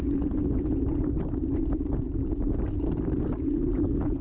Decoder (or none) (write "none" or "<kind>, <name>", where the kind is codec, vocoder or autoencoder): none